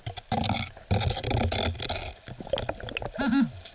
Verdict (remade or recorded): recorded